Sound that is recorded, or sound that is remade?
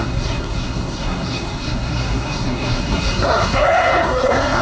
remade